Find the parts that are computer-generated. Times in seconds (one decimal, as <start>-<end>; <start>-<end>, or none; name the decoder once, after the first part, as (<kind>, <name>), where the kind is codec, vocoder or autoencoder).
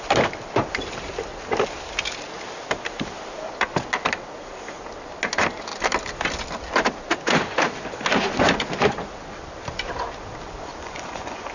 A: 10.8-11.5 (vocoder, Vocos)